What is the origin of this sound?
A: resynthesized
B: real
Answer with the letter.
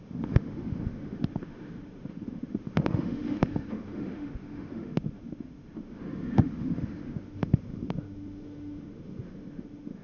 A